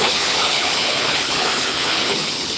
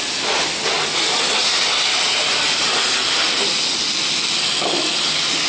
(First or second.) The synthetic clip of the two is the first